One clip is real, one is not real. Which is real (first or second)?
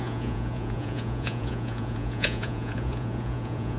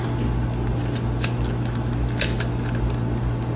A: second